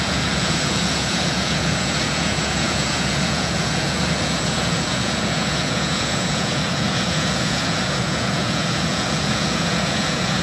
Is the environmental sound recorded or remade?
remade